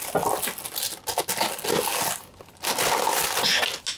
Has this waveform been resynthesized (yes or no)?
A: no